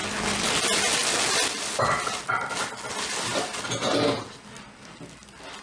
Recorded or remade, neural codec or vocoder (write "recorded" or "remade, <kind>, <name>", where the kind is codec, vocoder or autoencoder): recorded